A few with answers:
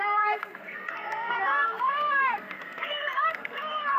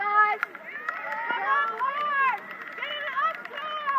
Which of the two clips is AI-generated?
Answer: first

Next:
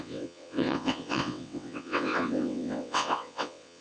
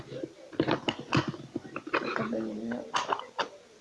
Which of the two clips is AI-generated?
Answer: first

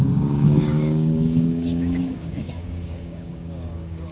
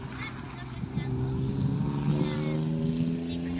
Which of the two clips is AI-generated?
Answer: first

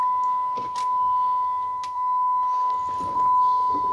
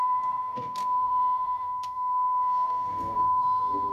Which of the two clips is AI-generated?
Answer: second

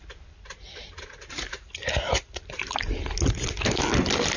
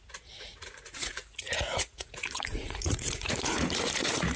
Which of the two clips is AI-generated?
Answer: second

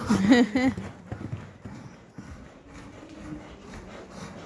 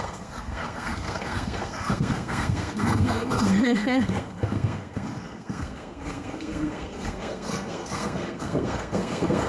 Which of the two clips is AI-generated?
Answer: second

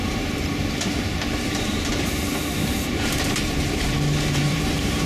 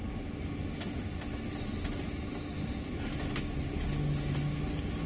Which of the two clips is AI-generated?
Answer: first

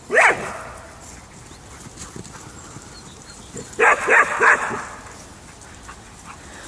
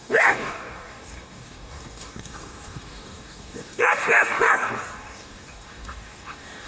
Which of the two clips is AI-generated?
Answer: second